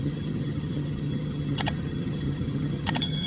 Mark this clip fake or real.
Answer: fake